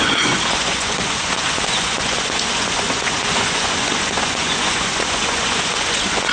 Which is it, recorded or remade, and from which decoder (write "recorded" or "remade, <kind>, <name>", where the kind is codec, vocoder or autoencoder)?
remade, vocoder, Vocos